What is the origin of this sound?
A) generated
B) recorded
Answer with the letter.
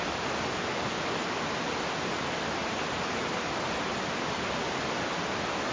B